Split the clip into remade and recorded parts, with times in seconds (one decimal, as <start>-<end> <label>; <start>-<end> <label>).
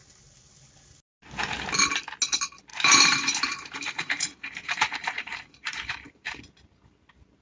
0.0-2.7 recorded; 2.7-6.4 remade; 6.4-7.4 recorded